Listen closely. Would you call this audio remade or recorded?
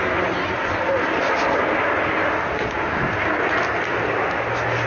recorded